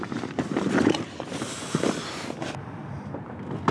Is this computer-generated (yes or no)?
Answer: no